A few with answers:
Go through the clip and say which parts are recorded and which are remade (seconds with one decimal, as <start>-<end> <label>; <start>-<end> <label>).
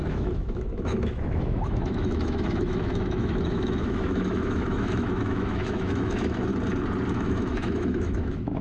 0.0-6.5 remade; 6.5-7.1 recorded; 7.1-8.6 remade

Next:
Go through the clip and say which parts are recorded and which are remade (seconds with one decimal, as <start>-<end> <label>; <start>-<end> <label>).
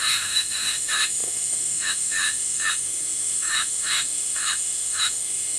0.0-5.6 remade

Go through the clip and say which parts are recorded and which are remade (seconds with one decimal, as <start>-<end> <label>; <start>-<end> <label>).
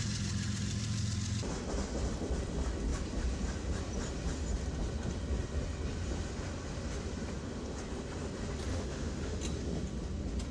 0.0-8.7 recorded; 8.7-9.4 remade; 9.4-10.5 recorded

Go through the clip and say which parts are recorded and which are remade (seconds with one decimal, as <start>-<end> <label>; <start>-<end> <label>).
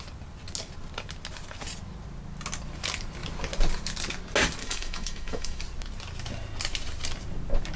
0.0-4.6 recorded; 4.6-5.6 remade; 5.6-7.8 recorded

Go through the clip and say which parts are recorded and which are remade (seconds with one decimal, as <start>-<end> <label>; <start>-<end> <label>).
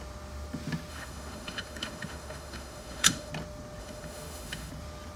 0.0-0.9 recorded; 0.9-3.3 remade; 3.3-3.8 recorded; 3.8-4.7 remade; 4.7-5.2 recorded